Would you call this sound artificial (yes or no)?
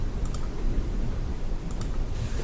yes